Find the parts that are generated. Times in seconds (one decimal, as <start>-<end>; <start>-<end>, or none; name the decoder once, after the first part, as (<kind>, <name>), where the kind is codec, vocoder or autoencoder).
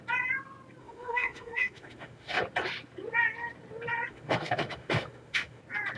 0.8-2.4 (autoencoder, DAC-VAE); 4.1-5.6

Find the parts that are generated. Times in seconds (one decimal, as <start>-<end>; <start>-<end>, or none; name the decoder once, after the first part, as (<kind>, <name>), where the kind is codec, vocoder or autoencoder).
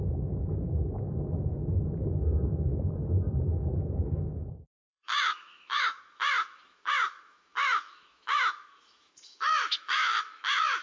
0.0-10.8 (autoencoder, DAC-VAE)